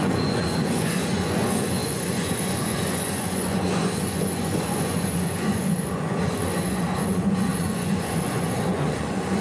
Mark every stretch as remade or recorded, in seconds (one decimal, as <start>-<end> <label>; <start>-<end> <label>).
0.0-9.4 remade